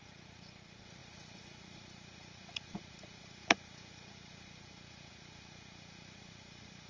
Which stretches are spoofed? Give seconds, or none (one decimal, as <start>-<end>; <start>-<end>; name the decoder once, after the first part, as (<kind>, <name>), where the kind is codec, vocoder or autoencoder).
0.0-6.9 (vocoder, Vocos)